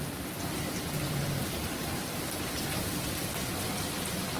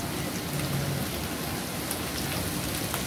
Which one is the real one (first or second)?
second